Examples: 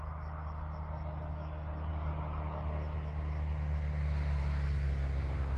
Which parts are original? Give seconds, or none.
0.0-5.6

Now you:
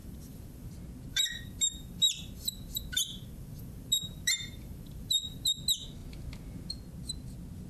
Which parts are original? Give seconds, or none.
0.7-1.1; 5.6-7.7

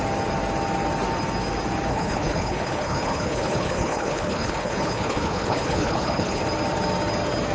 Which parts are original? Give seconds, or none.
0.0-1.9; 6.4-7.5

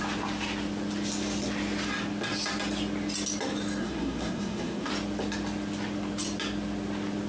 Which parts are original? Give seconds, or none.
0.0-3.8; 4.9-7.3

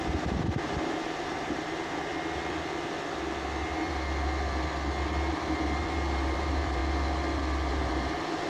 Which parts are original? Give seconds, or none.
2.1-5.8; 6.8-7.7